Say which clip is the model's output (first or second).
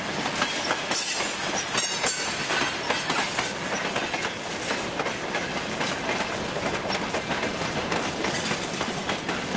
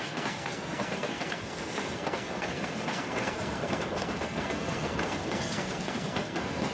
second